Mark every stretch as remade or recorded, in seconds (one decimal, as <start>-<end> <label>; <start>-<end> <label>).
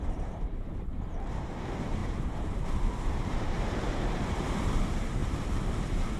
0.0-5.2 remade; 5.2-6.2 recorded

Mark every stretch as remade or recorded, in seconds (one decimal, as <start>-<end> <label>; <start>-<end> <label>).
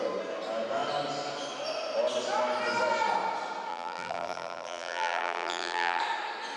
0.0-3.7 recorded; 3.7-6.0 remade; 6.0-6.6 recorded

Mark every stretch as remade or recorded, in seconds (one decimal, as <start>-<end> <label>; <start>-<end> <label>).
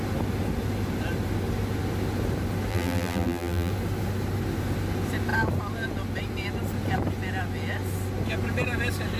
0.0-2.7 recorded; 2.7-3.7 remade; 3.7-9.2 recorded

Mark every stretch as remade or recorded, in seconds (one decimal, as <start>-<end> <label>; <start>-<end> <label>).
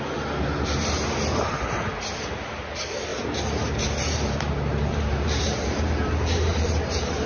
0.0-3.1 recorded; 3.1-7.3 remade